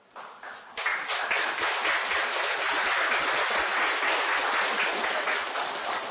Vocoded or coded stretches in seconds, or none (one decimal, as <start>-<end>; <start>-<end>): none